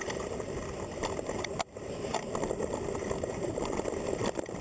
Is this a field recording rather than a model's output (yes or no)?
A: no